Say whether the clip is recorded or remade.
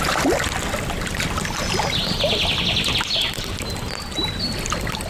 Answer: recorded